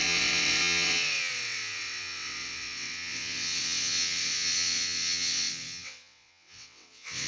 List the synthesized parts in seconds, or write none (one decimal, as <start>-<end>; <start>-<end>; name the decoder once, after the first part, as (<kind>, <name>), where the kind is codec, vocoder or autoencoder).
0.0-7.3 (vocoder, WaveNeXt)